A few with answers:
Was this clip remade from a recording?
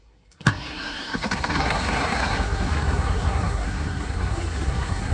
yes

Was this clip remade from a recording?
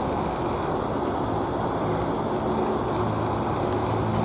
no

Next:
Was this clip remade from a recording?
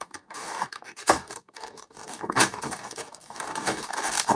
yes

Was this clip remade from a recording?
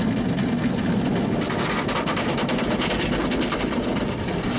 no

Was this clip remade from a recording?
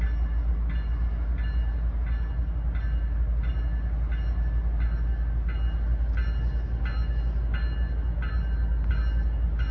no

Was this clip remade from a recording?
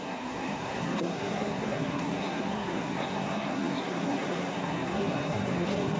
yes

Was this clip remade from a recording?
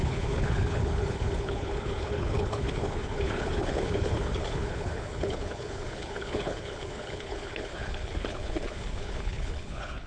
yes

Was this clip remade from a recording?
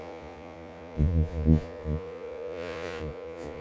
yes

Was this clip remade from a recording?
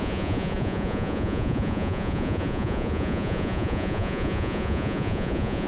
yes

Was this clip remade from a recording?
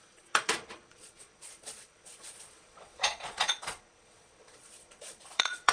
yes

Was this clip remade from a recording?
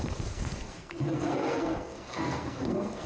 yes